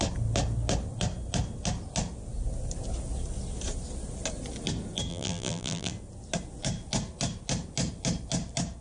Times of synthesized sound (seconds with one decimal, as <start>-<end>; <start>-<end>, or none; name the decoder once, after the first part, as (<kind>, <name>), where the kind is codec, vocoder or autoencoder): 5.1-5.9 (vocoder, BigVGAN v2)